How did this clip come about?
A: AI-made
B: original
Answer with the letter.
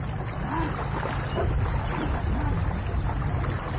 B